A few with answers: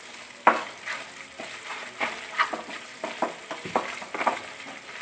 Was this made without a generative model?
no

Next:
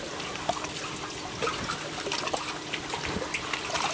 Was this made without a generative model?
yes